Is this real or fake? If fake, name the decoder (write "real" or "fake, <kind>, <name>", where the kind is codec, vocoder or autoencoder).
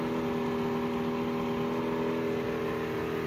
real